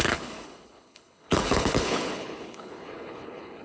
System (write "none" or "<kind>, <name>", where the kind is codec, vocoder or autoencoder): codec, HILCodec